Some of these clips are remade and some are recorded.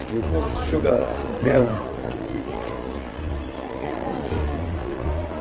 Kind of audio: remade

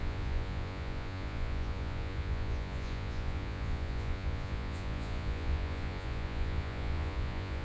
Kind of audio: remade